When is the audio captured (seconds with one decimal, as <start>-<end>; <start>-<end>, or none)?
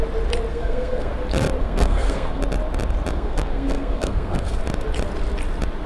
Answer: 0.0-0.5; 1.1-1.6; 2.4-3.1; 4.6-5.9